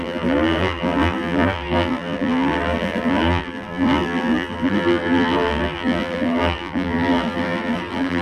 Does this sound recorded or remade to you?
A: remade